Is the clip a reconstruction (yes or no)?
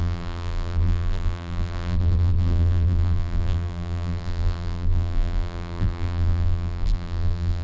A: yes